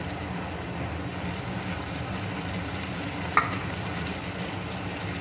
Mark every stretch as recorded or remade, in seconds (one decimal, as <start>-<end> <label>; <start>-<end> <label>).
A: 0.0-5.2 recorded